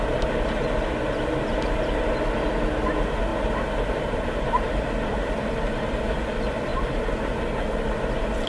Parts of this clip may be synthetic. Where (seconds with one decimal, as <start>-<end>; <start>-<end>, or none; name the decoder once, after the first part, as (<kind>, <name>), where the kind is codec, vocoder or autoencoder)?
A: 3.3-6.0 (vocoder, BigVGAN v2); 6.7-7.4